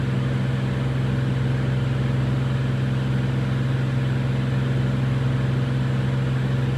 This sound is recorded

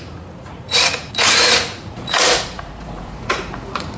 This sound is remade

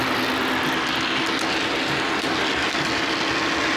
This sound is recorded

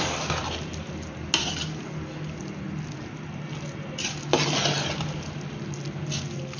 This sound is recorded